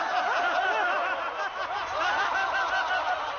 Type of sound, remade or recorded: recorded